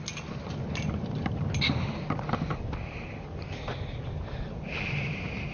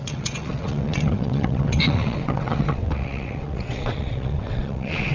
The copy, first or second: second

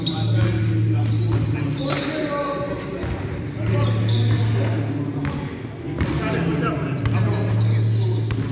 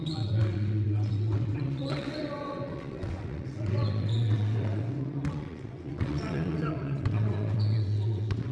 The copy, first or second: second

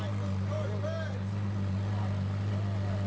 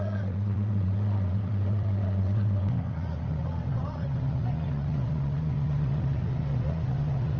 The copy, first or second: second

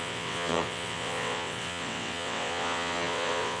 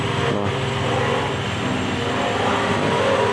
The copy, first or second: first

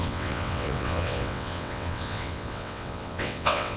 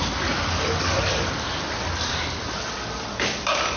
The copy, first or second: first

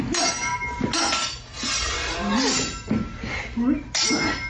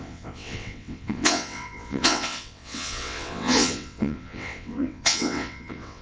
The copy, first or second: second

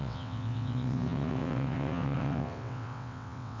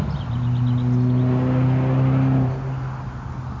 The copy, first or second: first